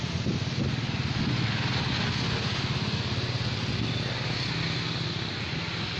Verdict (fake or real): real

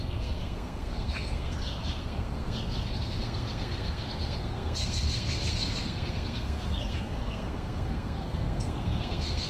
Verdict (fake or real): fake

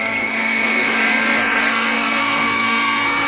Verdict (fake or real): fake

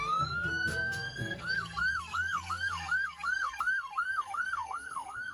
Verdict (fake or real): fake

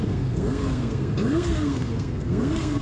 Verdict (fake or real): fake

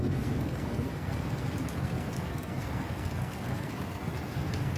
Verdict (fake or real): fake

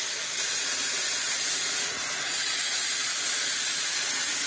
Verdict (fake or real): real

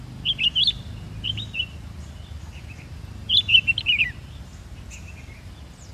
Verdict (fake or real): real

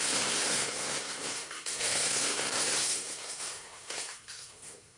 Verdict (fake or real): fake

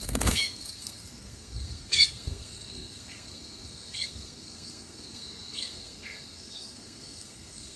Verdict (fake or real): fake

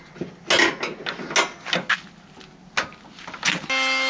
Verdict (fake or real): real